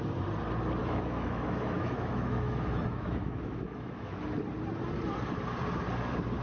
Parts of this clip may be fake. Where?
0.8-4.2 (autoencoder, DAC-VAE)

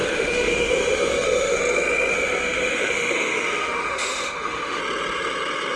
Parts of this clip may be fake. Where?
0.0-1.6 (autoencoder, DAC-VAE); 2.1-4.8

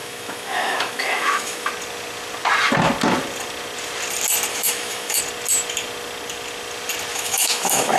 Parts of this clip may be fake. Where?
0.0-1.7 (autoencoder, DAC-VAE); 4.5-5.2; 7.1-8.0